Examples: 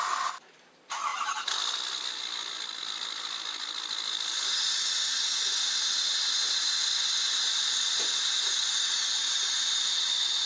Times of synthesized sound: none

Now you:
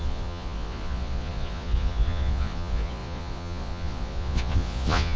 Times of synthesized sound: 0.0-5.2

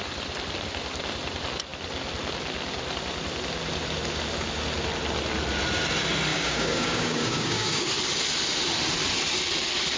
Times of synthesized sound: 6.3-7.9